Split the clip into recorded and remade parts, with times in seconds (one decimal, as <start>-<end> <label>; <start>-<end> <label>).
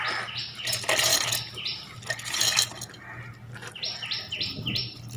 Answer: 0.0-5.2 recorded